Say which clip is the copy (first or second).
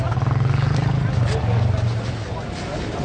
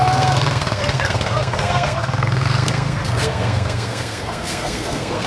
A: second